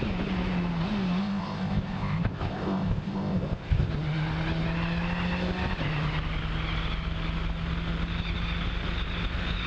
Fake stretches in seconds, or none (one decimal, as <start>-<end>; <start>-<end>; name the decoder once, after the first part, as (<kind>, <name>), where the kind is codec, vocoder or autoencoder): 1.2-3.9 (codec, ZipCodec)